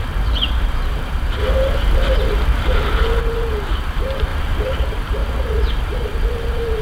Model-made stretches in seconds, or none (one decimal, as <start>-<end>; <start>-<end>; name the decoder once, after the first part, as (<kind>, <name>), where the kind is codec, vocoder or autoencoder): 0.0-1.4 (vocoder, BigVGAN v2); 3.2-5.2; 5.8-6.8